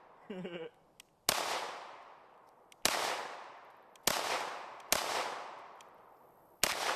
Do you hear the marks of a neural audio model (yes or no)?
no